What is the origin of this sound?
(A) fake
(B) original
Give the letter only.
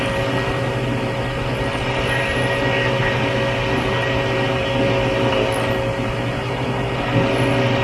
B